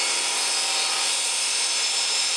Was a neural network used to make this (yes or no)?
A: no